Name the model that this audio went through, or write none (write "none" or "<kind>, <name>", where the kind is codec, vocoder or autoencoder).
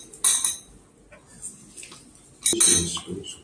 none